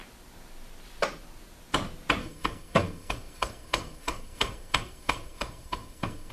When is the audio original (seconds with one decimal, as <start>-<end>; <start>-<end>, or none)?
0.0-2.2